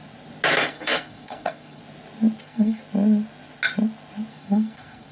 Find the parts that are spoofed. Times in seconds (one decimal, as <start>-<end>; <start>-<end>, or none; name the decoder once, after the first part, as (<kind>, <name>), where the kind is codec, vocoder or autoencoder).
0.6-1.8 (codec, SNAC); 2.4-2.8; 4.3-5.1